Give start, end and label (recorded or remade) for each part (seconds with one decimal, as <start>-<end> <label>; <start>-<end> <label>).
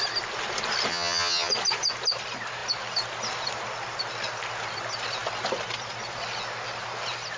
0.0-0.9 recorded; 0.9-1.5 remade; 1.5-7.4 recorded